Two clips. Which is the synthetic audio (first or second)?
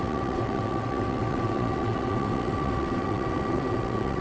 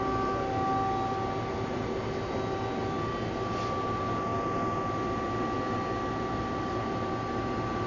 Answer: first